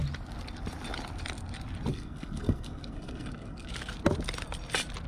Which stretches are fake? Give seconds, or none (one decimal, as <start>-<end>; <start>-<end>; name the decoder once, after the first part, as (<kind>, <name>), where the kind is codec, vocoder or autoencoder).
1.9-3.7 (codec, SNAC)